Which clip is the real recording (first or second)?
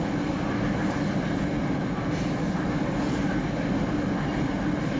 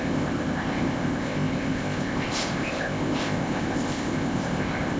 first